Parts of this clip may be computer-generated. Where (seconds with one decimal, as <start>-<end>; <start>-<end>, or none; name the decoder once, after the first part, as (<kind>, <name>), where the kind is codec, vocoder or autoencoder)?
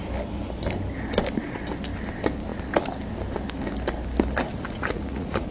4.5-5.5 (vocoder, Vocos)